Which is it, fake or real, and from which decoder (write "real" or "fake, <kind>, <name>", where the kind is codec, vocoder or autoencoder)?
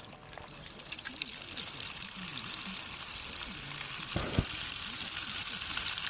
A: real